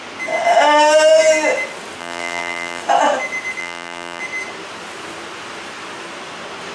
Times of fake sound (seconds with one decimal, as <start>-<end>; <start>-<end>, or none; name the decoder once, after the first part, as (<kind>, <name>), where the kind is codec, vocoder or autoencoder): 2.0-2.8 (vocoder, BigVGAN v2); 3.6-4.2